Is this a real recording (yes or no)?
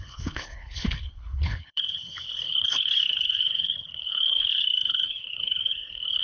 no